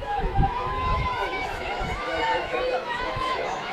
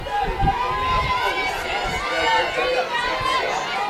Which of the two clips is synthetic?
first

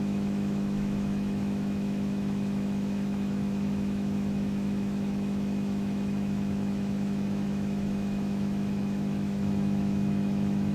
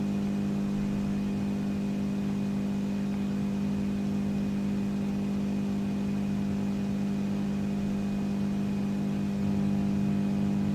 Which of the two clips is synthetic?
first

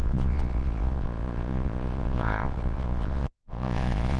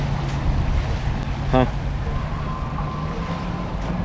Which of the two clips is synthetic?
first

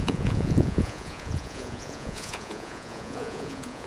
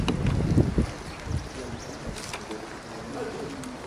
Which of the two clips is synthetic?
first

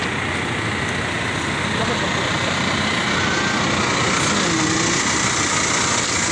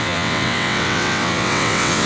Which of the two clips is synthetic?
second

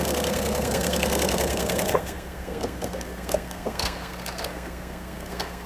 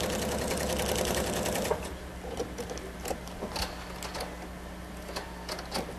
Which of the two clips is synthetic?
first